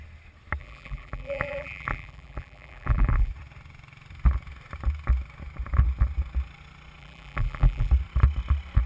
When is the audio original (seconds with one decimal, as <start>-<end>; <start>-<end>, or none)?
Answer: 0.0-0.6; 3.3-7.0; 7.9-8.9